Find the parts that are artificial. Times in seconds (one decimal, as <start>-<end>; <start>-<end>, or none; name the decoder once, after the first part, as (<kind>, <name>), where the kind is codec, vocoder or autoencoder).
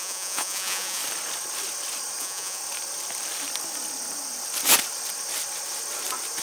0.0-1.0 (vocoder, Vocos); 2.2-2.6